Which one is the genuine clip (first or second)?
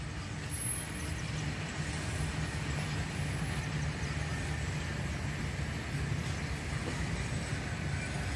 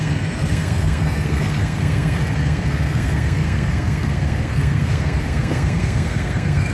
first